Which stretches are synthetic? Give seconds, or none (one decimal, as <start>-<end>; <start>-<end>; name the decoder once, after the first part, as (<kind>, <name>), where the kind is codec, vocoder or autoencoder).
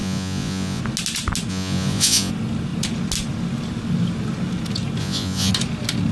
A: 0.0-0.8 (vocoder, Vocos); 1.5-2.3; 5.0-5.5